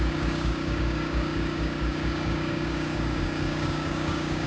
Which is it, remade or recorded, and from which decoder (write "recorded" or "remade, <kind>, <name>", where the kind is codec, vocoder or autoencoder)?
remade, codec, DAC